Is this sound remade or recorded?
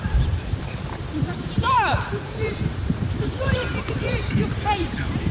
remade